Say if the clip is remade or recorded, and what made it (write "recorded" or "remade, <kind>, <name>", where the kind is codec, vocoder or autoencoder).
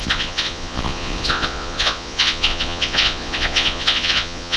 remade, vocoder, Vocos